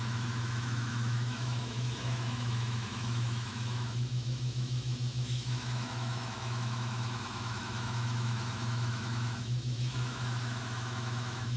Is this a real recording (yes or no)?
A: no